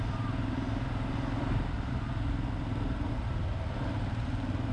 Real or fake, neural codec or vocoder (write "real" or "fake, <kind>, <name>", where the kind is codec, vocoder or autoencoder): real